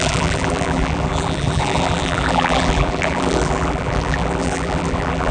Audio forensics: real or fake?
fake